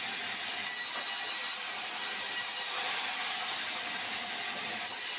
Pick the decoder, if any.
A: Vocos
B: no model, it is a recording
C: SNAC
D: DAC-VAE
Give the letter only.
B